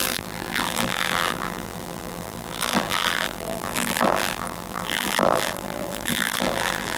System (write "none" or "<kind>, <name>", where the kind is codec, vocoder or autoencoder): vocoder, BigVGAN v2